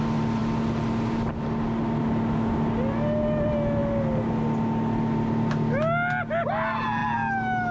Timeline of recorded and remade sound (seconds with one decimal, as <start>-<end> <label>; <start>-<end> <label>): 0.0-7.7 recorded